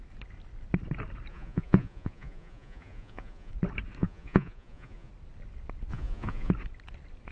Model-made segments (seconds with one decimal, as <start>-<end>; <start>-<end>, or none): 1.3-3.5; 4.0-5.1; 5.9-6.5